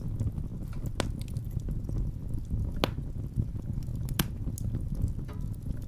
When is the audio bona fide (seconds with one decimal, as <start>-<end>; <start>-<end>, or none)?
0.0-5.9